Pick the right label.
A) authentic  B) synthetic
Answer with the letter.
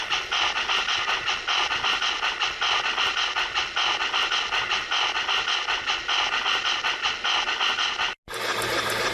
A